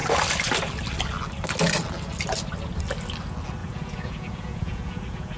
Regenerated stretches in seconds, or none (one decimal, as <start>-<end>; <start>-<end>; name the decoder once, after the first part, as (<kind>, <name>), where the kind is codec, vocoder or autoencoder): 3.6-5.4 (vocoder, Vocos)